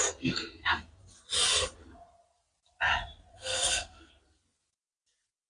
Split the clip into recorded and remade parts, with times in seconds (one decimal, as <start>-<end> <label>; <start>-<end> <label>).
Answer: 0.0-3.3 recorded; 3.3-4.1 remade; 4.1-5.5 recorded